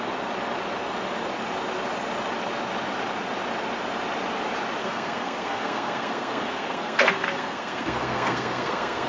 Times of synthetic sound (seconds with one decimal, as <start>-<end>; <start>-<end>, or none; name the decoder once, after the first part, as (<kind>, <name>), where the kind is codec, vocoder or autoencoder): 4.8-9.1 (codec, SNAC)